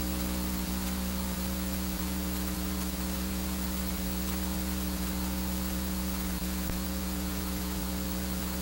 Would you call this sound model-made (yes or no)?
yes